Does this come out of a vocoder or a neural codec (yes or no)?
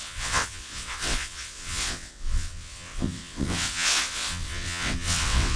yes